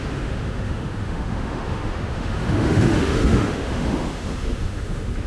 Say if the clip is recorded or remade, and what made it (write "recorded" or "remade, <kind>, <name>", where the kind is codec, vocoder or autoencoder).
remade, autoencoder, DAC-VAE